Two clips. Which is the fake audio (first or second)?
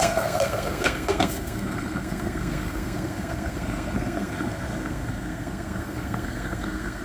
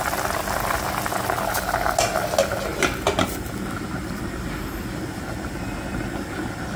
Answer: first